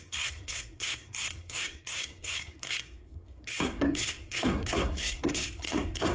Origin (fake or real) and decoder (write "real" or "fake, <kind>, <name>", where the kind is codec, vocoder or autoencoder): fake, codec, SNAC